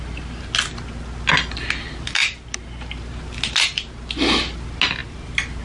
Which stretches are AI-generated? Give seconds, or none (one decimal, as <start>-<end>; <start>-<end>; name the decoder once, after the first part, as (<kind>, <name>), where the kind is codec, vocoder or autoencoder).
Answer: none